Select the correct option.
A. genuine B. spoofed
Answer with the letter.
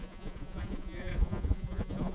B